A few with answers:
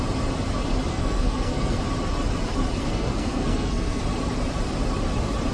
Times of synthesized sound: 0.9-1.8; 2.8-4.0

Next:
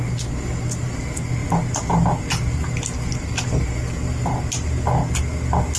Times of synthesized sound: none

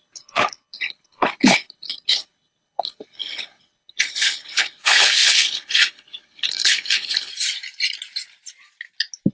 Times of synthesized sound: 0.0-7.3

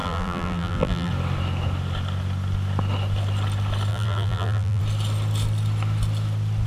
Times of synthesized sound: 0.0-1.1; 3.9-4.8

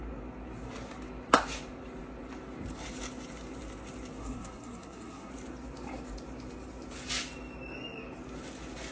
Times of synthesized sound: 4.2-5.3

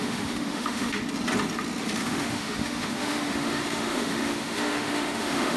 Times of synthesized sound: 0.0-1.0; 2.0-5.6

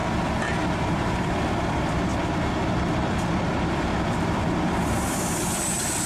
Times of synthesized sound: 0.0-6.1